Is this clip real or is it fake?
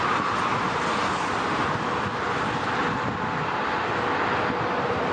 real